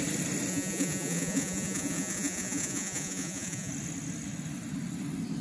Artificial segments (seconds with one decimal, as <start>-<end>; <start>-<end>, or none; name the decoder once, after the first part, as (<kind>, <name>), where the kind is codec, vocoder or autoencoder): 0.5-3.7 (vocoder, Vocos)